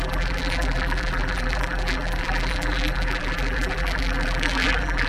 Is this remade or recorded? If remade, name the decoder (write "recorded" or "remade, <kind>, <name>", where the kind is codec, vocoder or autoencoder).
remade, vocoder, BigVGAN v2